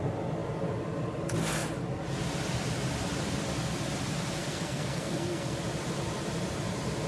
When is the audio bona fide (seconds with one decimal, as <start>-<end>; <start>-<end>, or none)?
0.0-4.4; 5.6-7.1